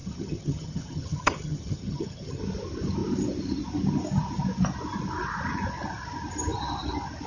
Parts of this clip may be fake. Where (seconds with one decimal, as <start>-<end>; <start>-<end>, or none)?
0.0-2.4